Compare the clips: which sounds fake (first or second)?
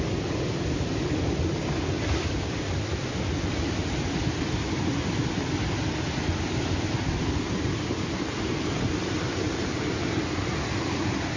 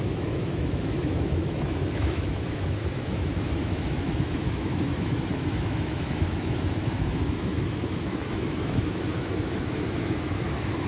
second